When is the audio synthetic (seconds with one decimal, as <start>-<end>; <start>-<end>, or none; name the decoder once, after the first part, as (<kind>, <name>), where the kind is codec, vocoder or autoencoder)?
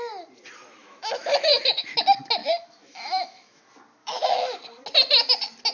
0.8-2.0 (autoencoder, DAC-VAE); 2.4-3.6; 4.0-4.6